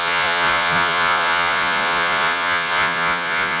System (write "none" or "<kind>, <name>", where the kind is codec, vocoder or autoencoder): vocoder, Vocos